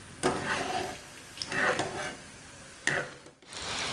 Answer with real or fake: real